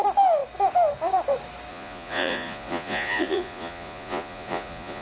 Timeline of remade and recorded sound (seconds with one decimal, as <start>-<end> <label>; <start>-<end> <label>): 0.0-1.7 recorded; 1.7-5.0 remade